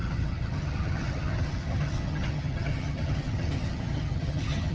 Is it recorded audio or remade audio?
remade